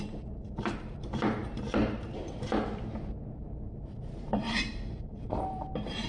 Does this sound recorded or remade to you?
remade